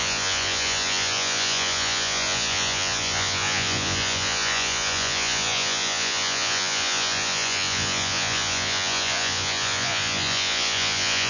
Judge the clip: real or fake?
fake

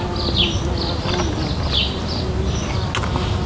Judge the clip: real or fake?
real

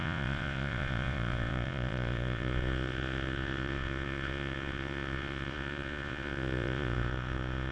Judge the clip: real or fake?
fake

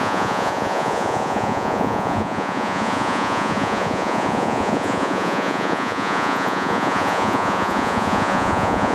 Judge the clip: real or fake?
fake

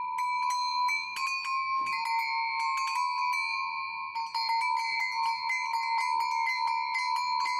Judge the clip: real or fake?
real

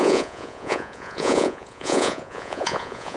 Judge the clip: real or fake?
fake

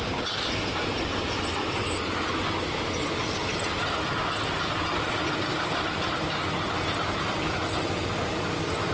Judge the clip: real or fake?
real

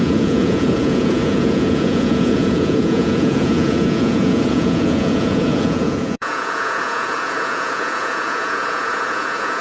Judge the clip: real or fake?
fake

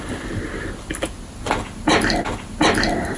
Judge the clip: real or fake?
real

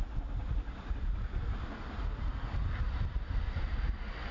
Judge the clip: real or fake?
real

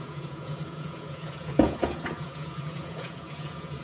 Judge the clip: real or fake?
fake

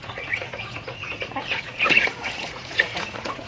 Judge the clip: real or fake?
fake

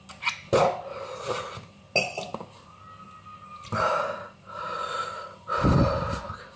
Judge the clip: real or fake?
real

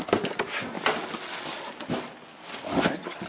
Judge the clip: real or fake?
real